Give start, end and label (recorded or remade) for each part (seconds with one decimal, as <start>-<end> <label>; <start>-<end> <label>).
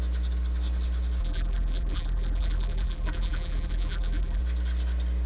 0.0-1.2 recorded; 1.2-4.4 remade; 4.4-5.3 recorded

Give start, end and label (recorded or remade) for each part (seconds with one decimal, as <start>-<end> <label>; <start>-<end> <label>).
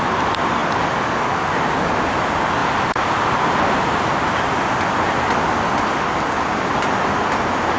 0.0-2.6 recorded; 2.6-4.2 remade; 4.2-7.8 recorded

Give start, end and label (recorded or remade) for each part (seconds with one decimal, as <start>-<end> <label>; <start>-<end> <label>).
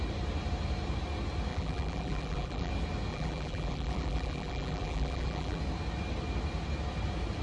0.0-1.5 recorded; 1.5-2.7 remade; 2.7-3.1 recorded; 3.1-5.6 remade; 5.6-7.4 recorded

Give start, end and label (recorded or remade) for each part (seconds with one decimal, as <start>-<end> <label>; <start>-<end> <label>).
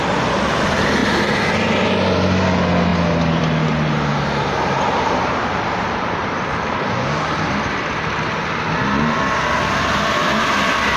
0.0-1.0 recorded; 1.0-1.5 remade; 1.5-4.1 recorded; 4.1-7.1 remade; 7.1-11.0 recorded